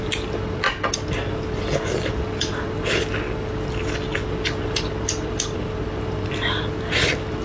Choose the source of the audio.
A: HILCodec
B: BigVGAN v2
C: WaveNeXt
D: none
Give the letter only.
D